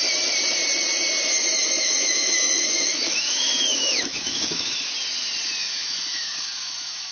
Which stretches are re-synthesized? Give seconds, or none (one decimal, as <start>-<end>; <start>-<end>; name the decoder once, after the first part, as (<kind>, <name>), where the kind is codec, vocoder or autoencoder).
1.4-4.9 (autoencoder, DAC-VAE); 5.6-7.1